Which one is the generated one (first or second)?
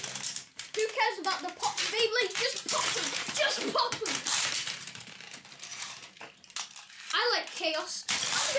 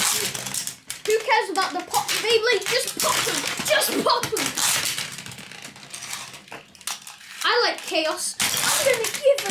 first